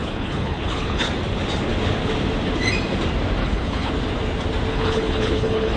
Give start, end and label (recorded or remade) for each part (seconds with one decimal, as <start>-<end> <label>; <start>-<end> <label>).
0.0-1.1 remade; 1.1-3.4 recorded; 3.4-3.9 remade; 3.9-4.7 recorded; 4.7-5.8 remade